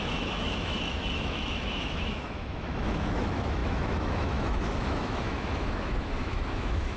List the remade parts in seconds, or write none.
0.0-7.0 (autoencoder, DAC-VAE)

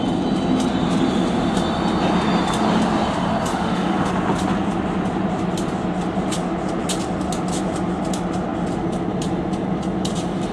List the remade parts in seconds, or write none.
3.5-4.1 (autoencoder, DAC-VAE)

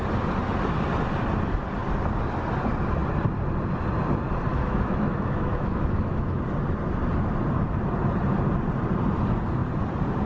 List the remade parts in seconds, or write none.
4.5-6.4 (autoencoder, DAC-VAE)